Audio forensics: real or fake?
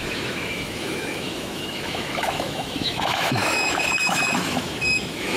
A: fake